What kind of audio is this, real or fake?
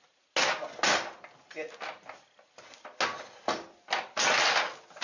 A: real